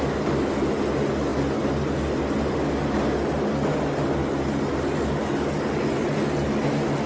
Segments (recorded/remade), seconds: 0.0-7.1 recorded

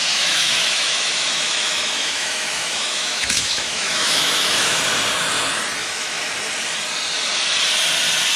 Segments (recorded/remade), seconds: 0.0-4.8 remade; 4.8-5.8 recorded; 5.8-6.3 remade; 6.3-8.4 recorded

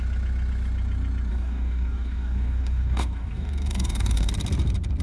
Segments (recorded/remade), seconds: 0.0-1.3 recorded; 1.3-4.3 remade; 4.3-5.0 recorded

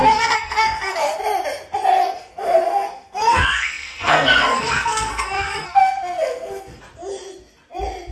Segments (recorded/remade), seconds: 0.0-1.2 remade; 1.2-2.0 recorded; 2.0-6.8 remade; 6.8-8.1 recorded

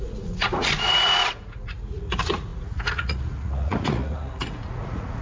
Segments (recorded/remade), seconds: 0.0-5.2 remade

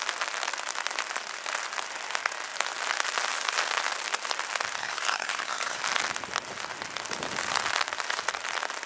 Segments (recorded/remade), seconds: 0.0-4.8 recorded; 4.8-5.8 remade; 5.8-8.9 recorded

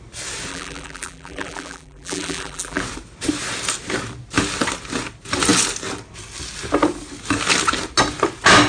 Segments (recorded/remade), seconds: 0.0-0.5 recorded; 0.5-2.8 remade; 2.8-8.7 recorded

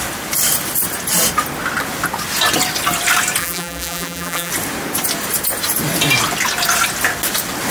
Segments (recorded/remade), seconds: 0.0-3.4 recorded; 3.4-4.5 remade; 4.5-7.7 recorded